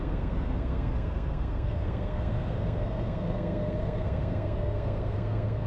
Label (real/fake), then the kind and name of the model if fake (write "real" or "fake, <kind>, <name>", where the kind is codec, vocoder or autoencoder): fake, codec, SNAC